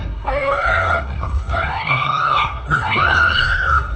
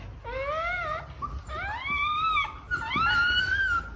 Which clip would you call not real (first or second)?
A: first